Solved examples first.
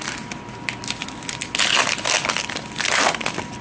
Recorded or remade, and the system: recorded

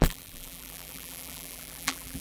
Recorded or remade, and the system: remade, vocoder, BigVGAN v2